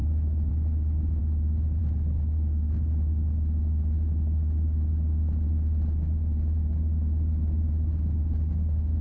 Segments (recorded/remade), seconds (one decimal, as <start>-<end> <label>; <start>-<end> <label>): 0.0-9.0 recorded